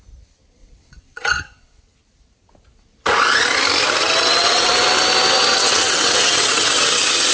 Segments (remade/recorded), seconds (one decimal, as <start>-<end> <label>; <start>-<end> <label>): 0.0-0.6 recorded; 0.6-1.8 remade; 1.8-4.0 recorded; 4.0-4.7 remade; 4.7-5.5 recorded; 5.5-7.3 remade